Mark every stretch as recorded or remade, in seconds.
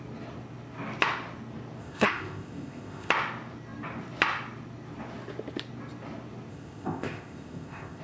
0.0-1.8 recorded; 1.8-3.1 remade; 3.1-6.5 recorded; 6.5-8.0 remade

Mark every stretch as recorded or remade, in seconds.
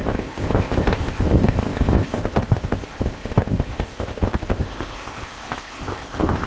0.0-6.5 remade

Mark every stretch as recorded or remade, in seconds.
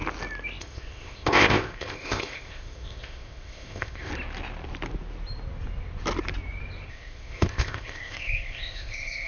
0.0-0.6 recorded; 0.6-4.1 remade; 4.1-6.9 recorded; 6.9-9.3 remade